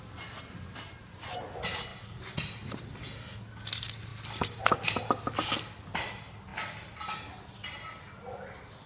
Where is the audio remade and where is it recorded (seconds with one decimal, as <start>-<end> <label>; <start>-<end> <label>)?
0.0-8.9 recorded